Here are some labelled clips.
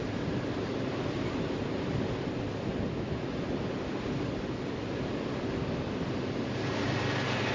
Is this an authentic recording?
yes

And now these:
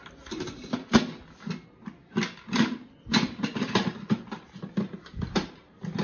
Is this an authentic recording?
yes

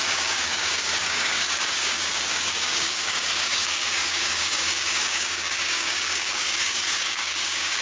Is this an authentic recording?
no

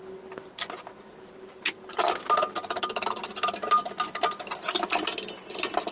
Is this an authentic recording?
yes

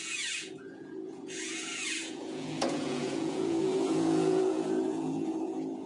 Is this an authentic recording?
no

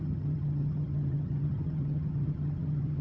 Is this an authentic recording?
no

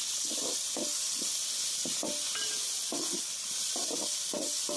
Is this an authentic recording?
yes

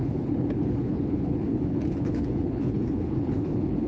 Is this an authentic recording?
no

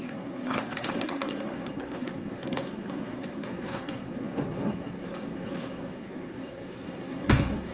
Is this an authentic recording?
no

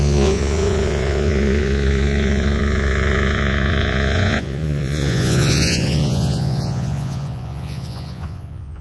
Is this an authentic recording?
no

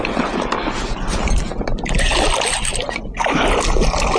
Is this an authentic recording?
yes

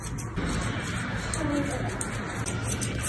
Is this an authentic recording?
yes